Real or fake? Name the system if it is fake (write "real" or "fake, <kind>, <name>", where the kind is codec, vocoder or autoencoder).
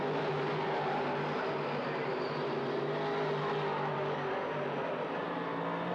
real